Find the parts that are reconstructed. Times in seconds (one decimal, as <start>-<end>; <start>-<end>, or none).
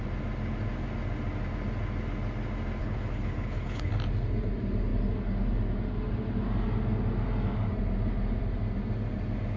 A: 2.8-3.9